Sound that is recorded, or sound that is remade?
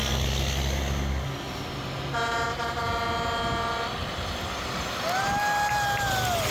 recorded